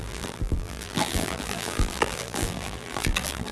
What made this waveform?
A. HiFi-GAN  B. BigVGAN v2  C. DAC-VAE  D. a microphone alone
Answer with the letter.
B